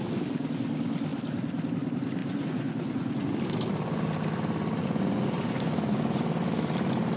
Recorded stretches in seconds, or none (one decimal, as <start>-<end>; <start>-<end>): 0.0-2.2; 3.3-4.8; 6.2-7.2

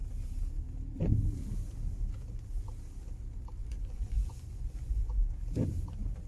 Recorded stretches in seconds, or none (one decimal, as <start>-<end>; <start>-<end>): 0.0-3.6; 5.2-6.3